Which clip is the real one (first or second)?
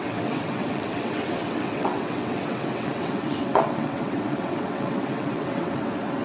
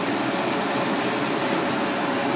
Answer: second